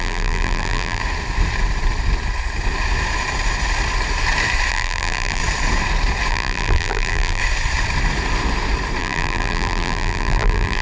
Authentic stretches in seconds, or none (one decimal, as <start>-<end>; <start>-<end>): 1.0-4.7; 5.4-6.3; 7.4-9.0